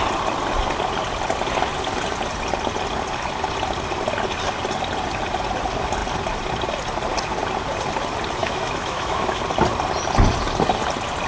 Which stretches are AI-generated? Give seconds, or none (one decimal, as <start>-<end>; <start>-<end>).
8.4-9.4